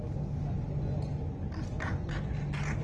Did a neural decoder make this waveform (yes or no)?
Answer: no